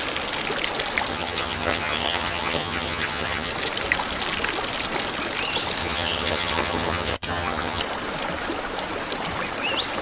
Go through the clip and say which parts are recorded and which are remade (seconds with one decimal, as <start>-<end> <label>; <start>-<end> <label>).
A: 0.0-1.1 recorded; 1.1-3.5 remade; 3.5-5.8 recorded; 5.8-7.8 remade; 7.8-10.0 recorded